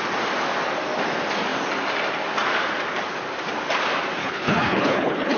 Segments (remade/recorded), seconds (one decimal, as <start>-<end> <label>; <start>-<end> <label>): 0.0-4.2 recorded; 4.2-5.4 remade